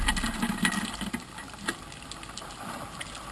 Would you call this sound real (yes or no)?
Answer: yes